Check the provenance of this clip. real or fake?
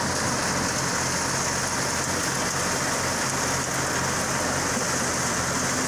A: real